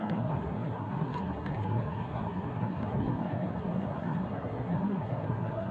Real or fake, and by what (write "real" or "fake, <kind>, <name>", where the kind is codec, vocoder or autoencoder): fake, codec, SNAC